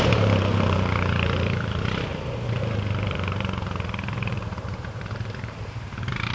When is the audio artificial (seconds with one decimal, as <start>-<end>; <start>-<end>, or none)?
0.0-6.3